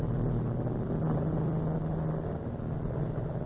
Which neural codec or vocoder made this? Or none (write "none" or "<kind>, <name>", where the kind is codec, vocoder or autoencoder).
none